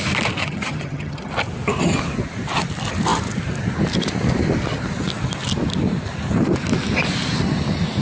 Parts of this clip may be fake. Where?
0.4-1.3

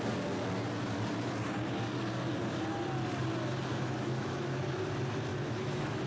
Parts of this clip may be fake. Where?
3.7-4.6; 5.3-6.1